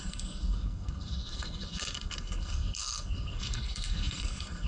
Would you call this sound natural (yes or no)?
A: no